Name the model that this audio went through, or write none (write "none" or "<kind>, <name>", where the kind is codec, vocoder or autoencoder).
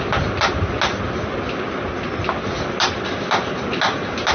none